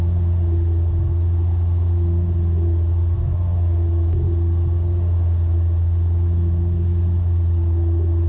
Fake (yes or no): no